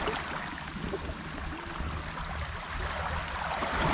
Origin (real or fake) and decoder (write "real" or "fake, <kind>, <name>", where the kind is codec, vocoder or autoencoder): real